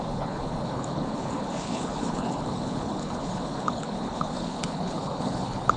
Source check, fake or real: fake